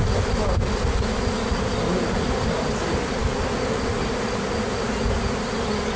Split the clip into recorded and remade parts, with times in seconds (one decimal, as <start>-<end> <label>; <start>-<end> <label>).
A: 0.0-6.0 recorded